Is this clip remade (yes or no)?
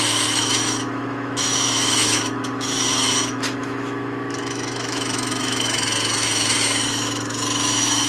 yes